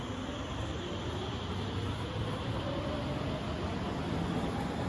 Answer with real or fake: real